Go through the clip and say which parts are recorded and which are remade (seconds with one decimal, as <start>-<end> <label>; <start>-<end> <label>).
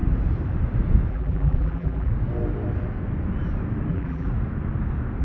0.0-1.1 recorded; 1.1-2.1 remade; 2.1-3.9 recorded; 3.9-4.3 remade; 4.3-5.2 recorded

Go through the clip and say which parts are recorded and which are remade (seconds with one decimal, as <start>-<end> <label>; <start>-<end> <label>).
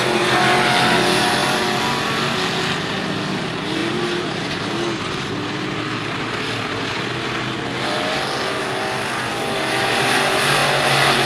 0.0-3.8 recorded; 3.8-4.7 remade; 4.7-11.3 recorded